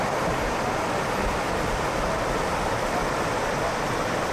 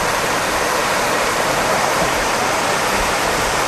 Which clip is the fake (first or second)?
second